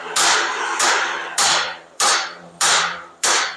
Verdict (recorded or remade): remade